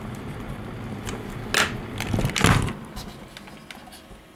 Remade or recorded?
recorded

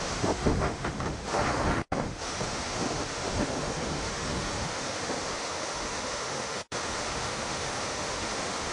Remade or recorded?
remade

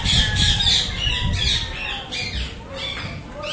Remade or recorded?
recorded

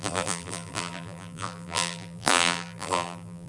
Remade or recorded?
remade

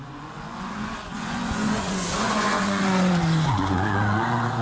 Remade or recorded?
remade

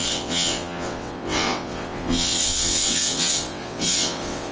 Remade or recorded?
remade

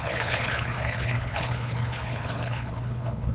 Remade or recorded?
remade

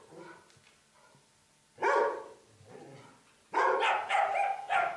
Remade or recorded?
recorded